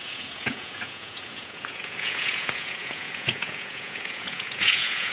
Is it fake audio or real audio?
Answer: fake